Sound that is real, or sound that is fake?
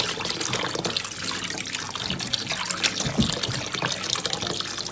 real